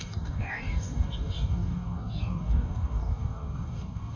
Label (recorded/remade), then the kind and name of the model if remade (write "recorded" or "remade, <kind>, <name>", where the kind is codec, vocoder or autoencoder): remade, codec, DAC